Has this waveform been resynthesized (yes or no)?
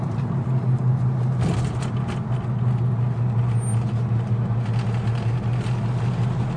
no